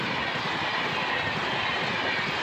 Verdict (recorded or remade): recorded